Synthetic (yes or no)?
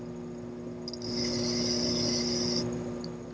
no